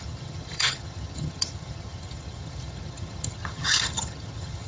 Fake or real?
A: fake